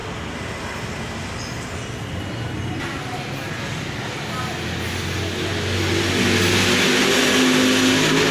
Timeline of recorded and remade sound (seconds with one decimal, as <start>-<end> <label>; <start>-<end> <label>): 0.0-8.3 recorded